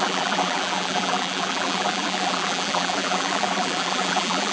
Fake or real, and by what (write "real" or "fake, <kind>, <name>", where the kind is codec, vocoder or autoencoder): fake, vocoder, BigVGAN v2